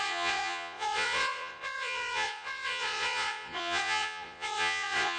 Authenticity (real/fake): fake